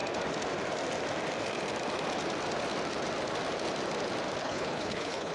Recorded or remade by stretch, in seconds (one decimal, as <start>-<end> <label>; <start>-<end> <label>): 0.0-4.4 recorded; 4.4-5.3 remade